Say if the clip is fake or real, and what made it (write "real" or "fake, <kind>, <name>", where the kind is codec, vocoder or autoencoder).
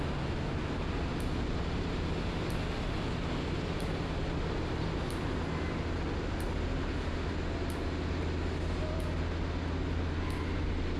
real